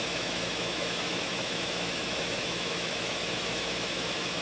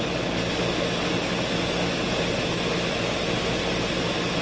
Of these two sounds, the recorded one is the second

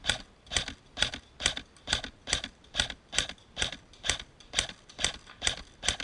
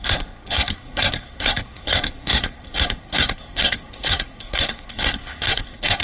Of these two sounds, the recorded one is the first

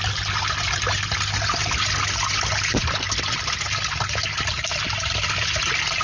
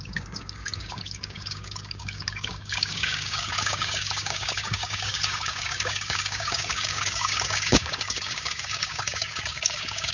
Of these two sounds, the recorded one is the first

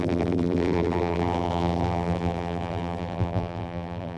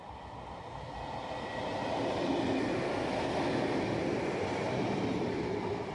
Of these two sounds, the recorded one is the second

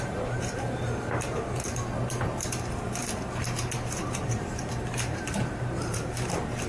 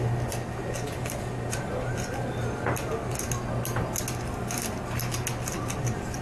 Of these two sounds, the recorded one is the second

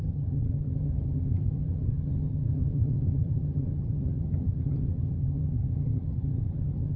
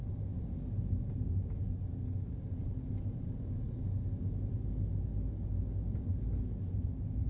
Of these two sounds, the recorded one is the second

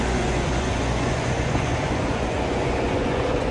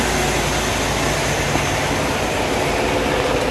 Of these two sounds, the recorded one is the second